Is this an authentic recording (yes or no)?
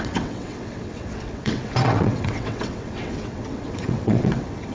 no